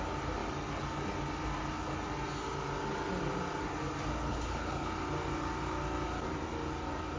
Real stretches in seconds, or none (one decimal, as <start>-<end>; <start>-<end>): 0.0-4.3; 4.9-7.2

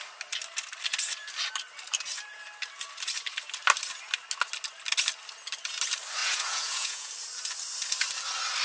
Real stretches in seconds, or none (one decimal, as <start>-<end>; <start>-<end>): 0.0-6.2; 7.1-8.6

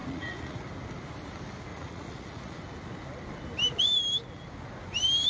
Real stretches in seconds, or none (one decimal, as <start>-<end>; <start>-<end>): 0.6-1.7; 2.6-5.3

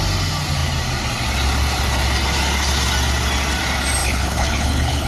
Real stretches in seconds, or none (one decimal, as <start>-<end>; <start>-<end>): 0.0-4.0

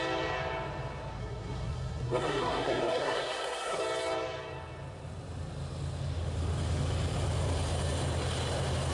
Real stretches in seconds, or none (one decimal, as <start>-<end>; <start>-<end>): 0.0-1.2; 3.8-8.9